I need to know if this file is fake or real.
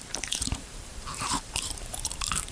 fake